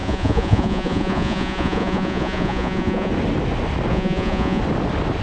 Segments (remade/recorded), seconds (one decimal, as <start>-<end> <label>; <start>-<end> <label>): 0.0-3.1 remade; 3.1-3.9 recorded; 3.9-4.6 remade; 4.6-5.2 recorded